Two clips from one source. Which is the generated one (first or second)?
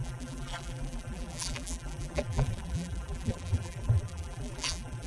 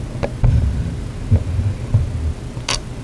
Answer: first